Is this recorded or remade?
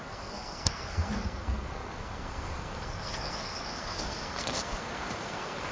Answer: remade